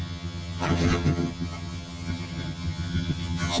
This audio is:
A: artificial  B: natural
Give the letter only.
A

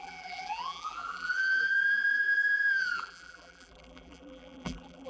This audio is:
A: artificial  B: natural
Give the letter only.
A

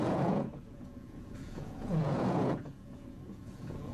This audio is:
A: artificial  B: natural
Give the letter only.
A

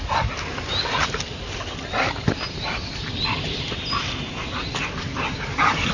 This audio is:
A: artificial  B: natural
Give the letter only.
B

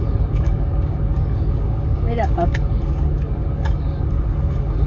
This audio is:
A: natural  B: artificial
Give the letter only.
B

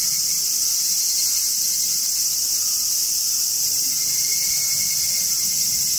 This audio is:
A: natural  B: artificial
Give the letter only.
A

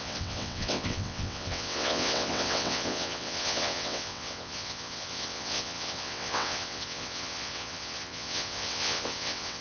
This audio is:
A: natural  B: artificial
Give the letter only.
B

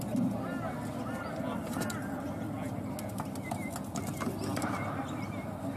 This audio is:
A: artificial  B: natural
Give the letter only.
B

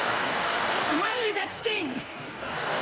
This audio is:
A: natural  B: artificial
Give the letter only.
B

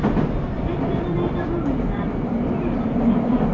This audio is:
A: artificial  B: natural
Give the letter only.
B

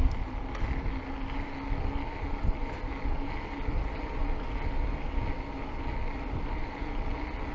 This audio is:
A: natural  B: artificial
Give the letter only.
A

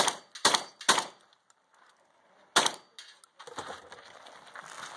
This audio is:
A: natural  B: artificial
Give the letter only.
A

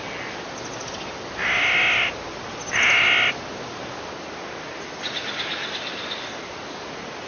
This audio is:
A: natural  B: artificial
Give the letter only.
A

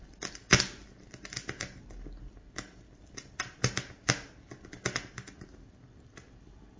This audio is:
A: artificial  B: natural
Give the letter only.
B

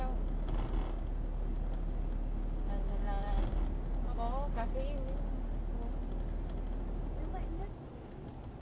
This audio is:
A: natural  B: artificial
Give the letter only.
A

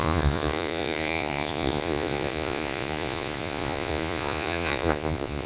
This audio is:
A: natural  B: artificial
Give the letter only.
B